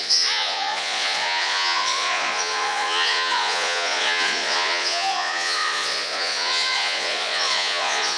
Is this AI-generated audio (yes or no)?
yes